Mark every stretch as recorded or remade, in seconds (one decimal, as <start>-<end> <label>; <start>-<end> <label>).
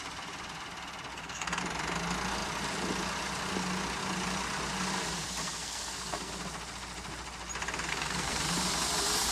0.0-1.1 recorded; 1.1-1.6 remade; 1.6-5.4 recorded; 5.4-6.3 remade; 6.3-7.9 recorded; 7.9-8.4 remade; 8.4-9.3 recorded